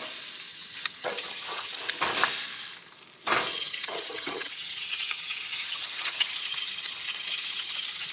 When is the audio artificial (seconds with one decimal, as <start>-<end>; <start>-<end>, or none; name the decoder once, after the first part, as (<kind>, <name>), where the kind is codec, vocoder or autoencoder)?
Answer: 0.5-1.8 (vocoder, HiFi-GAN); 3.5-8.1

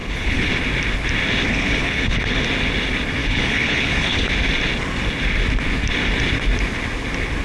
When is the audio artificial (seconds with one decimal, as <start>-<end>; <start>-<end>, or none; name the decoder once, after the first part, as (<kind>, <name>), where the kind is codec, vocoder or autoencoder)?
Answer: 0.0-0.5 (codec, HILCodec); 1.5-2.4; 3.2-4.3

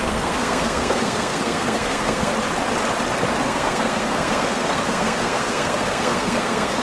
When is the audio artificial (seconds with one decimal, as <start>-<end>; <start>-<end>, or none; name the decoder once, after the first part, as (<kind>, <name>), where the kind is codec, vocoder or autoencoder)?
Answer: 0.0-2.3 (codec, SNAC); 3.4-6.8

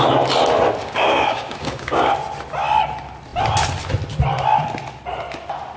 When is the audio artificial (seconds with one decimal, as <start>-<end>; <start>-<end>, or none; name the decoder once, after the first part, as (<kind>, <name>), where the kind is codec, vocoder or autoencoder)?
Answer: 0.8-2.1 (codec, DAC)

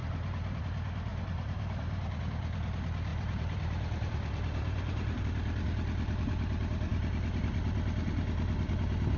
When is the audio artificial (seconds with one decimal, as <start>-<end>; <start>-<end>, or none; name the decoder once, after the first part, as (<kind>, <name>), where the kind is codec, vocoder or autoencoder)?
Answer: 0.0-0.6 (vocoder, BigVGAN v2); 1.1-2.2; 3.1-5.2

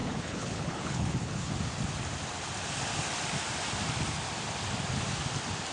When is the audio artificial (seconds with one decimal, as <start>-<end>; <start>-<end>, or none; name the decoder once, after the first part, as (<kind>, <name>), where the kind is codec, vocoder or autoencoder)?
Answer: 0.0-1.5 (codec, HILCodec)

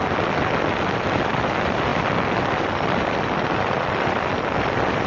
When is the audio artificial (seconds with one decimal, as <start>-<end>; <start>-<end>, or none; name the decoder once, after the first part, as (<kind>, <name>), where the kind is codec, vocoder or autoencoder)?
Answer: none

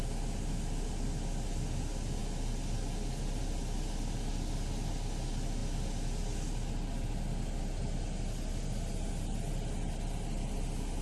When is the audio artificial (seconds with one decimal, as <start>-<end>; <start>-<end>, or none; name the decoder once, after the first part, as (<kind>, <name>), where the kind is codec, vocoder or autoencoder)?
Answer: none